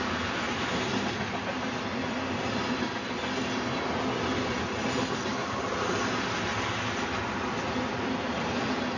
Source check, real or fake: real